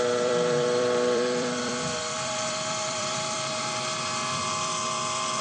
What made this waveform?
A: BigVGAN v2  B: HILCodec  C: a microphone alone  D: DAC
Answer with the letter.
A